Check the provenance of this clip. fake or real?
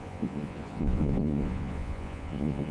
fake